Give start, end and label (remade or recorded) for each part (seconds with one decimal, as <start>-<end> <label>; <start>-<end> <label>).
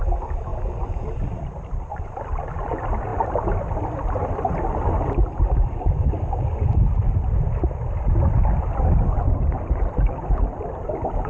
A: 0.0-3.1 recorded; 3.1-3.7 remade; 3.7-11.3 recorded